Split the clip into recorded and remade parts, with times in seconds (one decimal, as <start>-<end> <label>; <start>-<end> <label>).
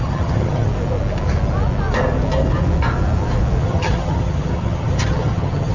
0.0-0.7 remade; 0.7-3.6 recorded; 3.6-5.7 remade